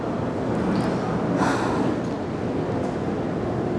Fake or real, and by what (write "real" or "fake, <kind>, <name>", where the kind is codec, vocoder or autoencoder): real